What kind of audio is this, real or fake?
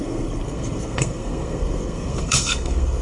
fake